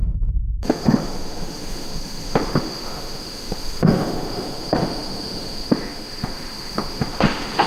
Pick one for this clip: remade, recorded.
remade